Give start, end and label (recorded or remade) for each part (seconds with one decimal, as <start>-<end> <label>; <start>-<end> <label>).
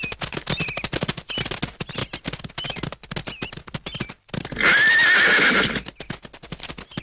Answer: 0.0-7.0 recorded